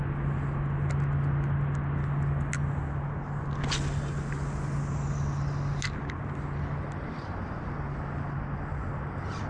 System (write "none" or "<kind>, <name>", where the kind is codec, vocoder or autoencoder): none